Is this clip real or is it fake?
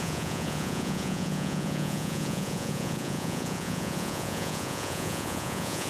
fake